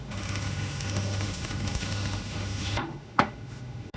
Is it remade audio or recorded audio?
remade